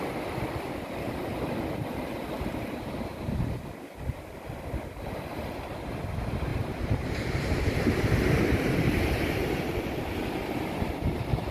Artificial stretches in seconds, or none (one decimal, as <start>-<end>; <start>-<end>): 6.5-10.4